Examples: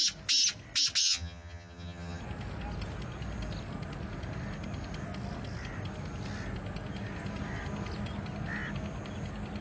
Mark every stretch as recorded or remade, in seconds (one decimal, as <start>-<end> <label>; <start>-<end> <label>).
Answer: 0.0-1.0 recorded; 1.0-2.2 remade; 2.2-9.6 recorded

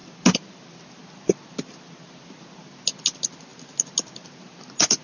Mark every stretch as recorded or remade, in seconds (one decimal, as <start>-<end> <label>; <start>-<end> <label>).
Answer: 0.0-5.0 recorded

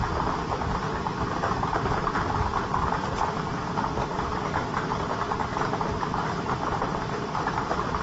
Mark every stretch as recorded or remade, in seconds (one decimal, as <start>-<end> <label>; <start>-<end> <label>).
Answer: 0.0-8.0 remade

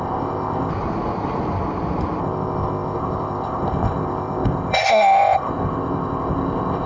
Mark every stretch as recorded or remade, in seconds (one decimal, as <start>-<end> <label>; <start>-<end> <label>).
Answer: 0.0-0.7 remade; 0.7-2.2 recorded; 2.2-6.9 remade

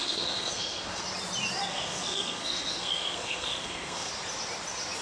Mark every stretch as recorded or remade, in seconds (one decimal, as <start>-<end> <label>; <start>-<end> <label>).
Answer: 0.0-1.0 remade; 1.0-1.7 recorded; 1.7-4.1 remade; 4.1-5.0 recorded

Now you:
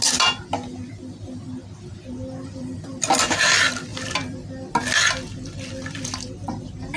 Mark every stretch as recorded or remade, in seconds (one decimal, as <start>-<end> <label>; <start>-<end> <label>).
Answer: 0.0-7.0 recorded